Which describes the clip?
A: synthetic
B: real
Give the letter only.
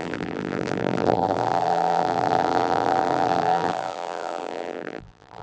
A